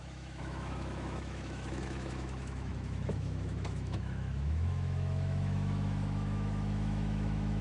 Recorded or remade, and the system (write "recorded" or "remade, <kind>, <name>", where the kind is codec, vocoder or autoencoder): remade, autoencoder, DAC-VAE